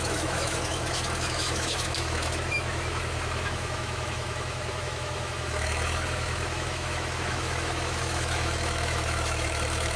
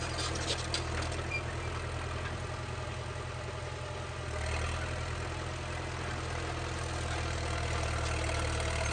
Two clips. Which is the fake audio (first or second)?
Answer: first